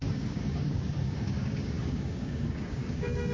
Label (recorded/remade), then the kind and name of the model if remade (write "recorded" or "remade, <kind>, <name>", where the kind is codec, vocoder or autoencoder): remade, codec, DAC